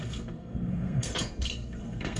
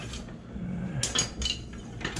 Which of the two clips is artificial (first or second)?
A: first